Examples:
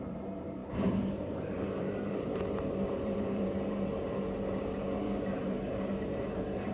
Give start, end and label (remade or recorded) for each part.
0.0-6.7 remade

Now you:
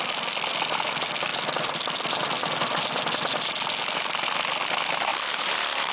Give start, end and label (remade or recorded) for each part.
0.0-5.1 recorded; 5.1-5.9 remade

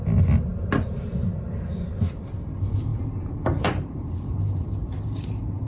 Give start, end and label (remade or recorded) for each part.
0.0-2.9 recorded; 2.9-4.6 remade; 4.6-5.7 recorded

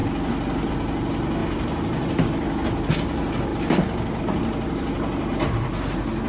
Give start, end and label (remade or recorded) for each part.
0.0-1.4 recorded; 1.4-2.2 remade; 2.2-6.3 recorded

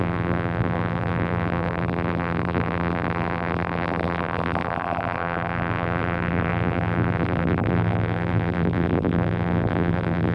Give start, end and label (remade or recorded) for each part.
0.0-10.3 remade

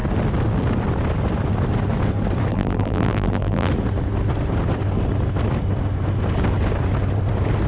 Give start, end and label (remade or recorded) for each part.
0.0-2.5 recorded; 2.5-3.7 remade; 3.7-7.7 recorded

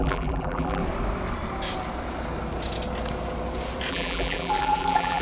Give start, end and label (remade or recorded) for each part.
0.0-0.8 remade; 0.8-3.9 recorded; 3.9-5.2 remade